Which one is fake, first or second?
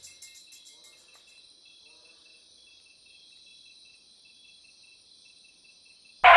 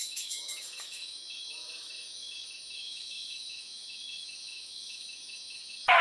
second